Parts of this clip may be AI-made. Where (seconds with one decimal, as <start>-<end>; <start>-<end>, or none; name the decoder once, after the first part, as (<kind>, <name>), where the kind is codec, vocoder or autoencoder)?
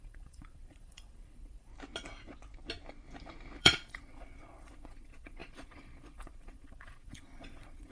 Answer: 0.0-1.7 (vocoder, Vocos); 3.6-7.9